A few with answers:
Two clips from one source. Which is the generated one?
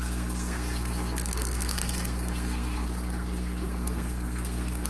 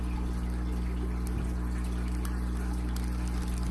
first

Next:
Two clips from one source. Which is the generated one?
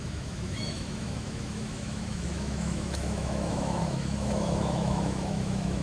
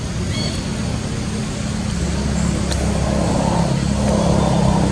first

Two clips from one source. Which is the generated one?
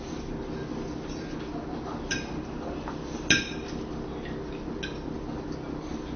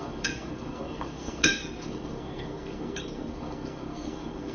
second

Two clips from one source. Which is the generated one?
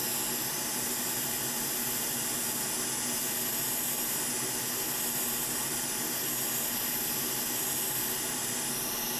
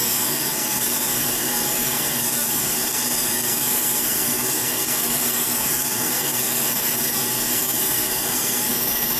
second